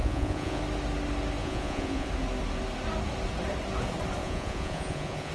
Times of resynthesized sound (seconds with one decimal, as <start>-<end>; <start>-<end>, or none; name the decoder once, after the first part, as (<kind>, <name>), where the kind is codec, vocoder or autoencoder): 0.0-0.6 (vocoder, Vocos); 1.4-2.1; 4.2-5.3